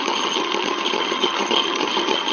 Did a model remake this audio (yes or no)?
yes